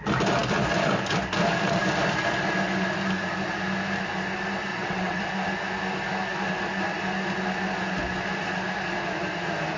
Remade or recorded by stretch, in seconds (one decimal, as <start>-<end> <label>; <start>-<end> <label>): 0.0-4.7 recorded; 4.7-5.2 remade; 5.2-9.8 recorded